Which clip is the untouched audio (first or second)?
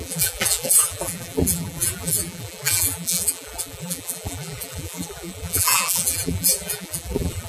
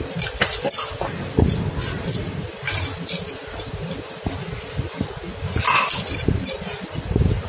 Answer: second